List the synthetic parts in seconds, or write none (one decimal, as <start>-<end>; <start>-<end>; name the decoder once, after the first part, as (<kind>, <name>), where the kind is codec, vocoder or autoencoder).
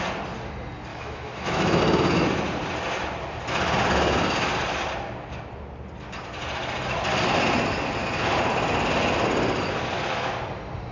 0.9-1.8 (autoencoder, DAC-VAE)